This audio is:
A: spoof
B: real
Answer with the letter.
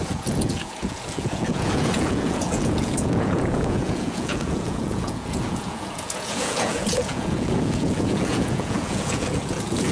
A